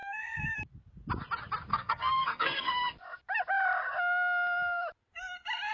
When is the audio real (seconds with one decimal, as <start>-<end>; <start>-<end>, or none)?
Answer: 0.6-1.7; 2.7-5.7